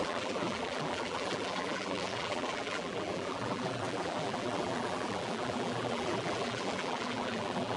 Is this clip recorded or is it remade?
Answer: remade